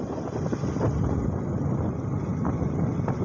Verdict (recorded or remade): recorded